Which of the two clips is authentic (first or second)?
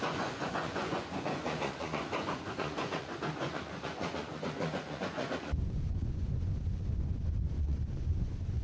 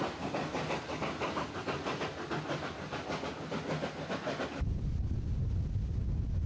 second